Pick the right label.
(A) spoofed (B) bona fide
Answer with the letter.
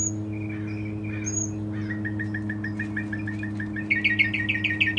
B